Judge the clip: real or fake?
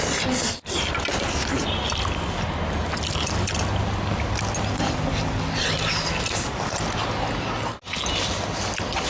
real